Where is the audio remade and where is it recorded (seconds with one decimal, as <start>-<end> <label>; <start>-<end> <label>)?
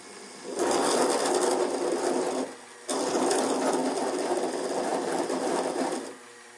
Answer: 0.0-4.9 recorded; 4.9-6.6 remade